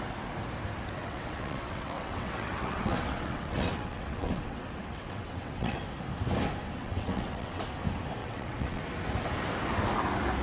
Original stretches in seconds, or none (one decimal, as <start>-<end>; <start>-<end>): 0.0-1.0; 5.8-6.8; 7.6-8.2; 8.8-10.4